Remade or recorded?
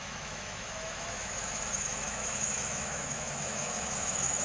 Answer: remade